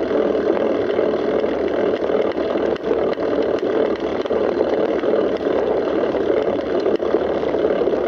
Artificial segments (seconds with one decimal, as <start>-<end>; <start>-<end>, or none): 4.1-6.9